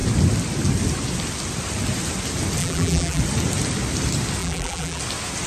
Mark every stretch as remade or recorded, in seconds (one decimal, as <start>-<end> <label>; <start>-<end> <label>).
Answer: 0.0-2.6 recorded; 2.6-3.2 remade; 3.2-4.4 recorded; 4.4-5.0 remade; 5.0-5.5 recorded